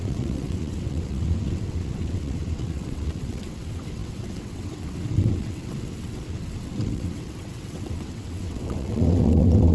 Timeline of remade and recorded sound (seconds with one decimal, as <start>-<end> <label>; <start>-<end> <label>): 0.0-9.7 remade